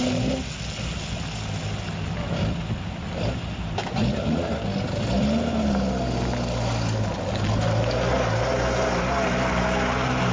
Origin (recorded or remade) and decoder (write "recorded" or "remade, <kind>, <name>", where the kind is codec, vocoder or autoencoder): recorded